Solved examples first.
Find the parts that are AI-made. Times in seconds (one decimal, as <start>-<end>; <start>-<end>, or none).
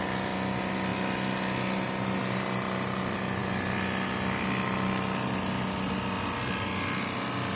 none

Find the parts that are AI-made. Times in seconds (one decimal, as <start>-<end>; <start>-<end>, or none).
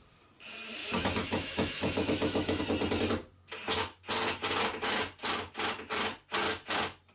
0.8-2.6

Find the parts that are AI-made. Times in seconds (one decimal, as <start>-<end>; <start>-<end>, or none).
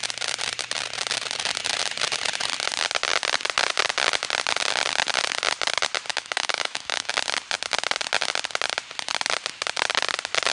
6.1-7.1